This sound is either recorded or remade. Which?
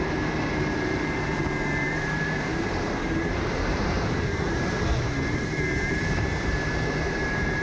remade